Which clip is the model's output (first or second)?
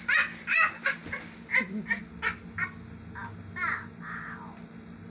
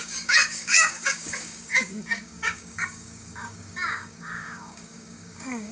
second